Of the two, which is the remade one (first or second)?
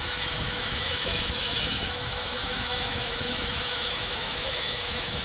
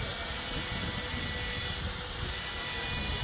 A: first